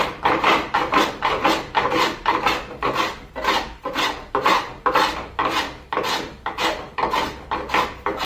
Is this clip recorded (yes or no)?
yes